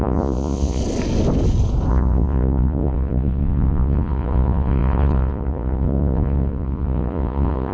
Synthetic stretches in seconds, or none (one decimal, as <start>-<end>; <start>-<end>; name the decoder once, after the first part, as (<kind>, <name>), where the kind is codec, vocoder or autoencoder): 0.0-0.8 (vocoder, Vocos); 1.9-7.7